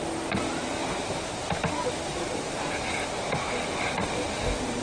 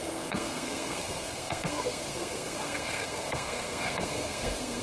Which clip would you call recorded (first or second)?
first